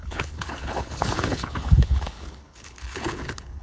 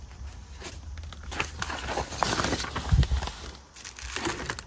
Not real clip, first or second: first